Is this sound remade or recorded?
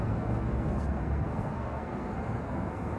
remade